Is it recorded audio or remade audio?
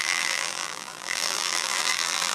remade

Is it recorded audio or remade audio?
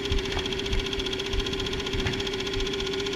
remade